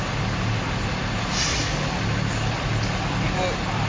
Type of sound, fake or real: real